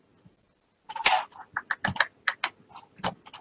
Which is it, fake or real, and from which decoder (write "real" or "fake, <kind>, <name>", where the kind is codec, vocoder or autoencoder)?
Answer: real